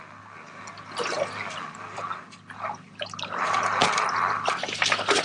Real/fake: real